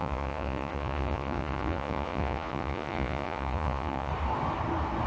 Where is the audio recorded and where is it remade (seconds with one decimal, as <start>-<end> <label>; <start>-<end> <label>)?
0.0-4.1 remade; 4.1-5.1 recorded